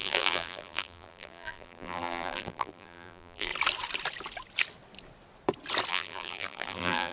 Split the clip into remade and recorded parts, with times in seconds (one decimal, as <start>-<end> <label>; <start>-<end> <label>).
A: 0.0-3.5 remade; 3.5-5.9 recorded; 5.9-7.1 remade